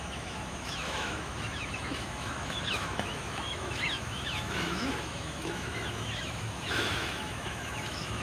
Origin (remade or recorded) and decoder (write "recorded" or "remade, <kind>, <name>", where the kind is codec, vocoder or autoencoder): remade, autoencoder, DAC-VAE